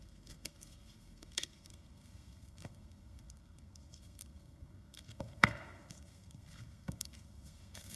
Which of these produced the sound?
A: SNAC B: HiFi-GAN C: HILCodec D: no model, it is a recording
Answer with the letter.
A